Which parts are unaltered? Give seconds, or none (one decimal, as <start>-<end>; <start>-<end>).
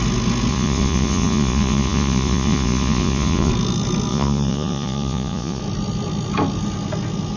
0.0-0.5; 3.5-4.1; 5.6-7.4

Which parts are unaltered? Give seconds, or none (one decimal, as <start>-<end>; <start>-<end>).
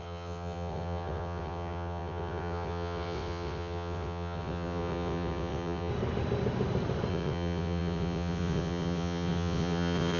5.9-7.1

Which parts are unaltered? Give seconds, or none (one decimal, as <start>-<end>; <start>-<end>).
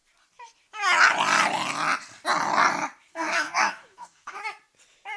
0.0-3.1; 4.4-5.2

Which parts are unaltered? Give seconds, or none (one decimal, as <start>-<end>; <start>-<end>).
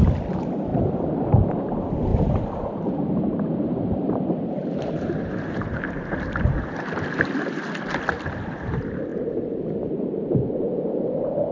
0.0-2.1; 5.8-9.1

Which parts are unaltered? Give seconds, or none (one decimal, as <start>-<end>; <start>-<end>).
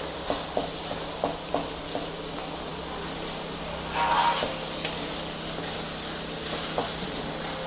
0.0-7.7